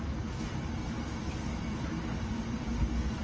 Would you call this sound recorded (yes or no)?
yes